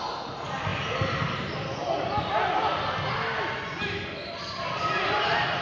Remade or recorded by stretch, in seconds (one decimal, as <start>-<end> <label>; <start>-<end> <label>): 0.0-5.6 recorded